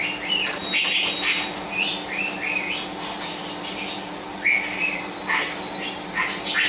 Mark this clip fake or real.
real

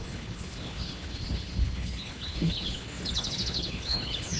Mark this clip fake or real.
fake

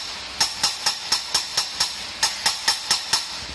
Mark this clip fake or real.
real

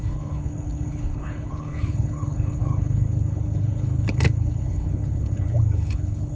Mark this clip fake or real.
fake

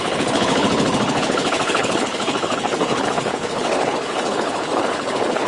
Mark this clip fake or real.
fake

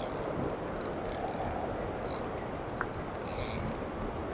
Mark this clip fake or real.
real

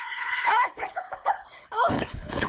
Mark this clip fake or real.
fake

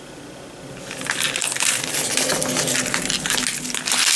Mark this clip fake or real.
real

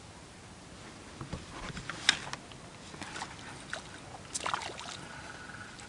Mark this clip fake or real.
real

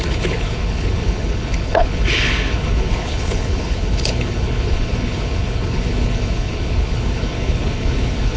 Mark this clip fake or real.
fake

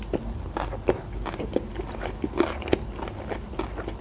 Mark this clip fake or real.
real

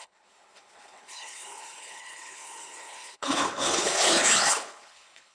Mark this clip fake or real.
fake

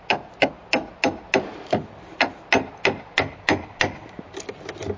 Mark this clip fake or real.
real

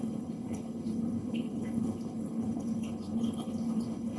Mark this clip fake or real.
fake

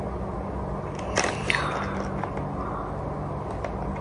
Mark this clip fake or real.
real